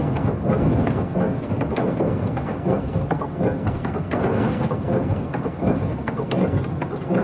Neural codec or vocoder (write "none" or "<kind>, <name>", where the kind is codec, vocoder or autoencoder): codec, SNAC